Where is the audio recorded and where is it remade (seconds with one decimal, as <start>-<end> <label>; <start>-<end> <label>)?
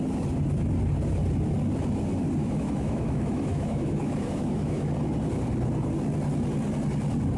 0.0-2.4 recorded; 2.4-4.9 remade; 4.9-7.4 recorded